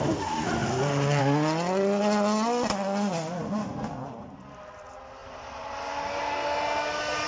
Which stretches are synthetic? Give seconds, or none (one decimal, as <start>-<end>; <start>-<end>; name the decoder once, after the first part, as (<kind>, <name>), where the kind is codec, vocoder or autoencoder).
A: none